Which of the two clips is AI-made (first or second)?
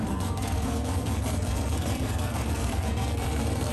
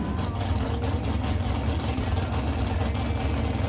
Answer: first